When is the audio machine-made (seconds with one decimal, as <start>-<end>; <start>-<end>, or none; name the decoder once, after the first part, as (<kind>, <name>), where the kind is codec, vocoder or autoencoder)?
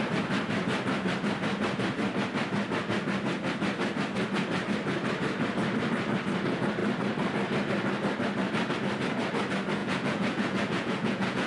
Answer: 9.8-11.5 (vocoder, Vocos)